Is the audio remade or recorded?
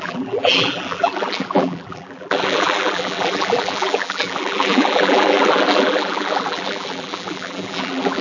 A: remade